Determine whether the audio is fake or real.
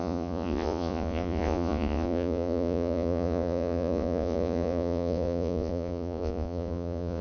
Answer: fake